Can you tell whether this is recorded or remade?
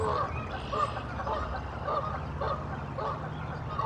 recorded